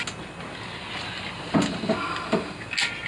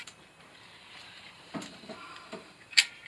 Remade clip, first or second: second